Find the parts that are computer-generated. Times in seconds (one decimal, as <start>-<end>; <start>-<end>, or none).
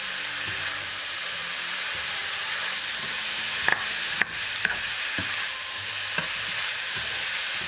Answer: 0.0-2.2; 3.1-3.7; 4.9-7.7